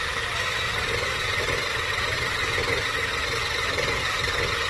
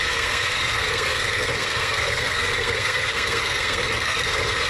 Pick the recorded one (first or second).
first